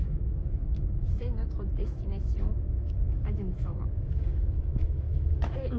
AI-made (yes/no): yes